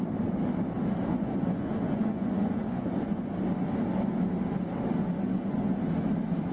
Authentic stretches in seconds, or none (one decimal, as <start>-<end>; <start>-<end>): 0.0-1.1; 3.2-5.0; 5.8-6.5